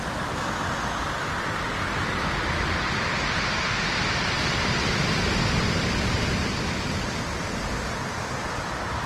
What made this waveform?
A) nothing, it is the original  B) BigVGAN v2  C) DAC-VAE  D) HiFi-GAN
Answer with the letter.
A